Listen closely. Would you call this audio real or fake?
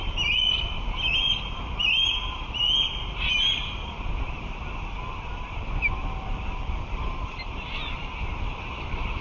real